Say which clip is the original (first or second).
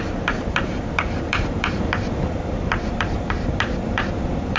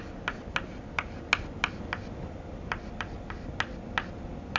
second